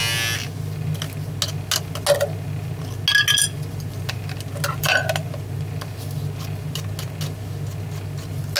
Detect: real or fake real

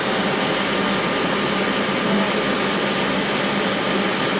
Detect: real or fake real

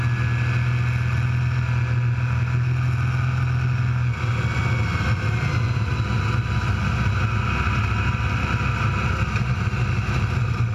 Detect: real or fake real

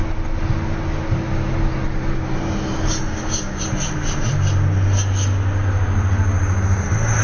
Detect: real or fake real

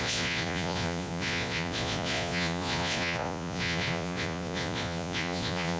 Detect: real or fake fake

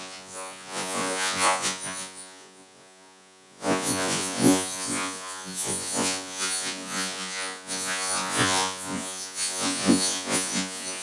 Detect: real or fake fake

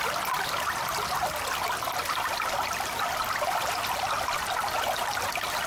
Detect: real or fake real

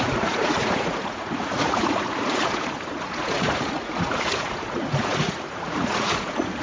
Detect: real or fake fake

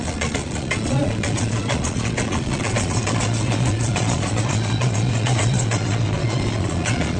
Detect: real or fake fake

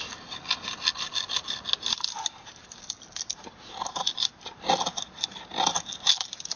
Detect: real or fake real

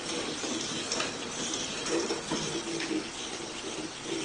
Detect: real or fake real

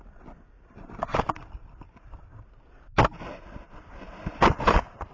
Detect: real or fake real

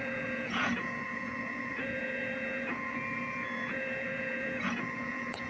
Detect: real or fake fake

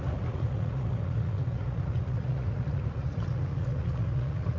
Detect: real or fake fake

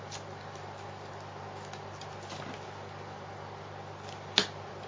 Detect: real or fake real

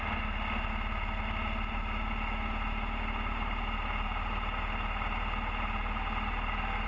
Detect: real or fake real